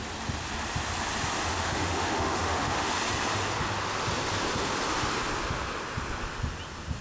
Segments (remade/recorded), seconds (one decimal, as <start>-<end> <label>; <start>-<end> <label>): 0.0-1.5 recorded; 1.5-2.9 remade; 2.9-7.0 recorded